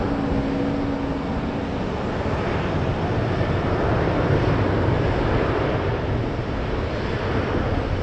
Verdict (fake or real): real